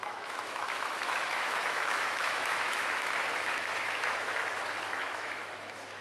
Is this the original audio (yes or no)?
no